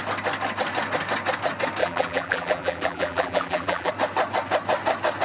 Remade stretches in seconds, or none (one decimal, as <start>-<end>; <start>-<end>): 1.8-3.9